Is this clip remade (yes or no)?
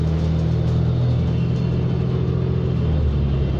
no